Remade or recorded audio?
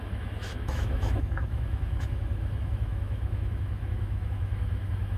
remade